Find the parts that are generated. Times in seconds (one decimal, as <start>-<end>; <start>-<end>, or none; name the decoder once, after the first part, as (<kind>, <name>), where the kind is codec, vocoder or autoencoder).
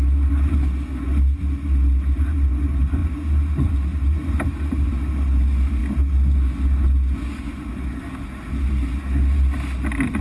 none